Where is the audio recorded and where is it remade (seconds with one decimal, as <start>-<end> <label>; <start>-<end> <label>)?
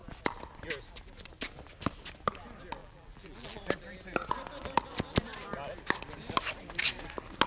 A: 0.0-2.8 recorded; 2.8-3.6 remade; 3.6-7.5 recorded